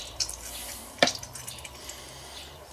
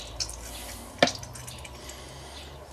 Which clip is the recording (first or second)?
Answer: second